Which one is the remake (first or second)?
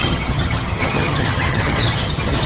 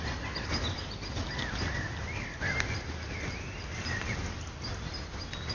first